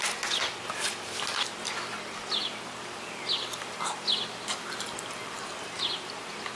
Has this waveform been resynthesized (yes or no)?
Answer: no